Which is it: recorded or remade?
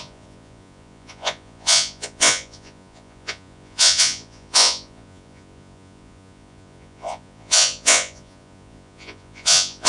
remade